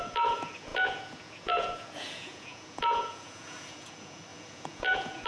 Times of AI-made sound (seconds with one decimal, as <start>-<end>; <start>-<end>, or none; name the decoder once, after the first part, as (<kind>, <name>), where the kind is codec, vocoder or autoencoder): 0.0-5.3 (vocoder, Vocos)